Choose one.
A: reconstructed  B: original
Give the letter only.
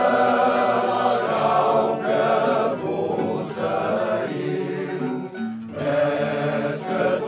B